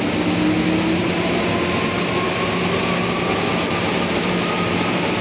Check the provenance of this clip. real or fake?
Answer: real